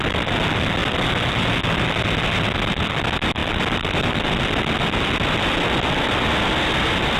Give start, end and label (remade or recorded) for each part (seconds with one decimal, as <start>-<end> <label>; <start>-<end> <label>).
0.0-3.4 recorded; 3.4-4.4 remade; 4.4-7.2 recorded